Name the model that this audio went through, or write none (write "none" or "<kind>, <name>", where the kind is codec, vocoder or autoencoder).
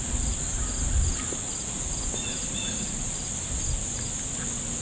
none